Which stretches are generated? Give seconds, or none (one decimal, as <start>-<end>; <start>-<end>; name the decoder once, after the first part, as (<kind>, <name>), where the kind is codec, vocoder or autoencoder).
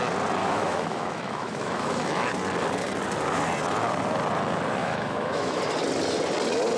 0.4-2.3 (autoencoder, DAC-VAE); 4.8-5.6